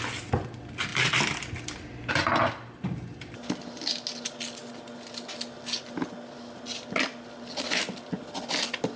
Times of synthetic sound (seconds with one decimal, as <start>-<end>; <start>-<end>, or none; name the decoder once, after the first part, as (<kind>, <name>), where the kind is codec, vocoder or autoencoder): none